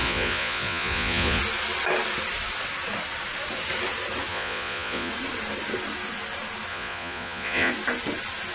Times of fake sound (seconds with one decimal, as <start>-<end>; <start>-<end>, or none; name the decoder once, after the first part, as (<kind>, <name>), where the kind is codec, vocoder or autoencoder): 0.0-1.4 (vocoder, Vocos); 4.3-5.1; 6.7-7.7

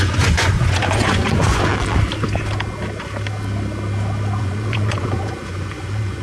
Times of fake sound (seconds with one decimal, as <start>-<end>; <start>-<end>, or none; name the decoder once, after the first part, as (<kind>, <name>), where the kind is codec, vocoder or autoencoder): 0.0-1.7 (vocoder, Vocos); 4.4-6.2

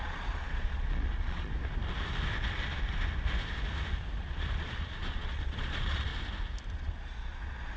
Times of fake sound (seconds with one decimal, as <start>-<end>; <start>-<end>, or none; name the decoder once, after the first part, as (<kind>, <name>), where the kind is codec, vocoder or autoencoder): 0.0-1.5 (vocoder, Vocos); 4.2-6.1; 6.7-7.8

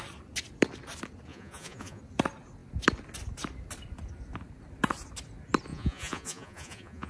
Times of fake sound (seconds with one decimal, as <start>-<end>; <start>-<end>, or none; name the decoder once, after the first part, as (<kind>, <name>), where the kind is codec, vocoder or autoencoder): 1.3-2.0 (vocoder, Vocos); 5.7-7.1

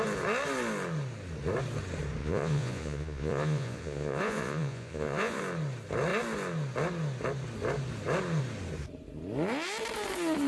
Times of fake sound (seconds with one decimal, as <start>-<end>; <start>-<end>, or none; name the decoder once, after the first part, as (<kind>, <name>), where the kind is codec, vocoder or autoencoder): 2.2-5.4 (vocoder, Vocos)

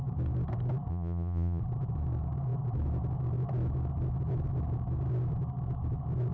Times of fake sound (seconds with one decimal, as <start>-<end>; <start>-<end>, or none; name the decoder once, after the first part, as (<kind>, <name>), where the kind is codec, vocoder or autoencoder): 0.9-1.6 (vocoder, Vocos)

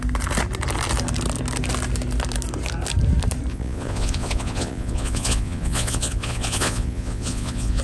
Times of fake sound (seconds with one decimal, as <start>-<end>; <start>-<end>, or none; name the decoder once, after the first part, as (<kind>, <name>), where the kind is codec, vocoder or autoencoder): 3.5-7.8 (vocoder, Vocos)

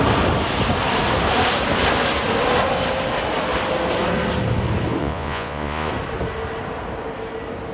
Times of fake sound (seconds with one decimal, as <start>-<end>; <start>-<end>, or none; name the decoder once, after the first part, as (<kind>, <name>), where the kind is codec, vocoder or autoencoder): 5.0-5.9 (vocoder, Vocos)